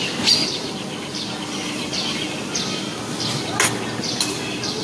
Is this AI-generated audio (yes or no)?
no